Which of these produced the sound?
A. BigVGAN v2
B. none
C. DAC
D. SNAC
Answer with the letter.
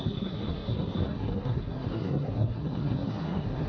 D